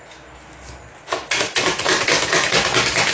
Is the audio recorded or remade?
recorded